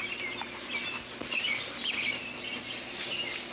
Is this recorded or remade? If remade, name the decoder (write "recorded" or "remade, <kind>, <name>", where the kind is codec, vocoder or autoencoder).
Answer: recorded